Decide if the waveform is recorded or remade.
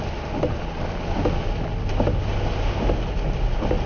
recorded